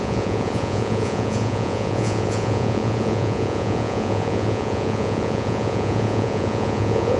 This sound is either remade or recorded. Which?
remade